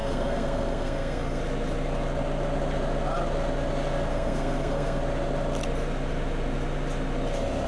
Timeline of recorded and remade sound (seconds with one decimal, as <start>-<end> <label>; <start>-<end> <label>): 0.0-1.4 remade; 1.4-4.1 recorded; 4.1-5.0 remade; 5.0-7.7 recorded